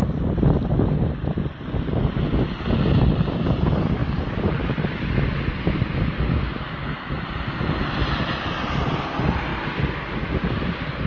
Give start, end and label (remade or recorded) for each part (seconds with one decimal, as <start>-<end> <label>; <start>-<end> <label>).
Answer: 0.0-11.1 recorded